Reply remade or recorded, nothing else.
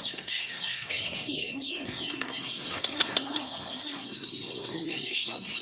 remade